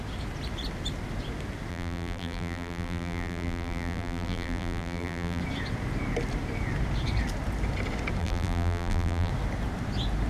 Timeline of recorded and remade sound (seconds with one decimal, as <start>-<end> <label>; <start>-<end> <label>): 0.0-1.7 recorded; 1.7-5.4 remade; 5.4-8.2 recorded; 8.2-9.3 remade; 9.3-10.3 recorded